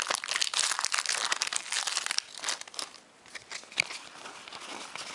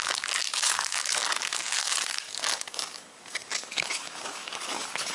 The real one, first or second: first